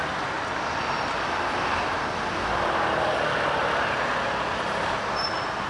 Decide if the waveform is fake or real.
real